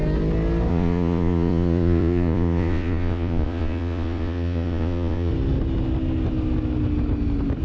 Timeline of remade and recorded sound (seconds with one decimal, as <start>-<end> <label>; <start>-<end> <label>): 0.0-0.7 recorded; 0.7-5.3 remade; 5.3-7.6 recorded